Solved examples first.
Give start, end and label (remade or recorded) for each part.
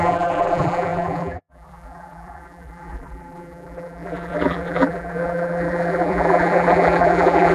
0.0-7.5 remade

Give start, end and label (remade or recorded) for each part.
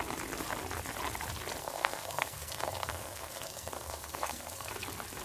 0.0-1.6 recorded; 1.6-4.7 remade; 4.7-5.2 recorded